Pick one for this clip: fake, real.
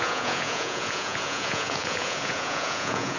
fake